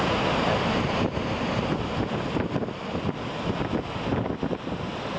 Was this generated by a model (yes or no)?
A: no